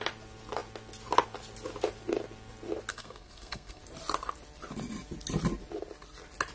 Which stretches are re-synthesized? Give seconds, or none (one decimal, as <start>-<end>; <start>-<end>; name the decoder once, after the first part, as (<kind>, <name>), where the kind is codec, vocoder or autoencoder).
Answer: 2.9-3.8 (codec, SNAC)